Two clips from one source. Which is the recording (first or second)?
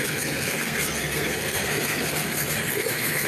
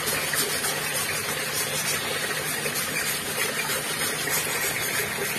second